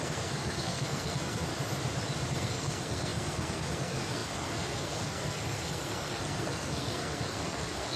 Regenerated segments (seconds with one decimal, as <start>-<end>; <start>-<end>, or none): 0.0-1.5; 2.3-8.0